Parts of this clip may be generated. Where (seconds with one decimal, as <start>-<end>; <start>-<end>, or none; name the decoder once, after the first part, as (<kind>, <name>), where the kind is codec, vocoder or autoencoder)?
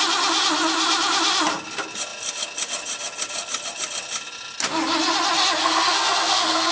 5.6-6.7 (codec, SNAC)